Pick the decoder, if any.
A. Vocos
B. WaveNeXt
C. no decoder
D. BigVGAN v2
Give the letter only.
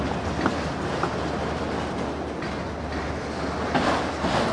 C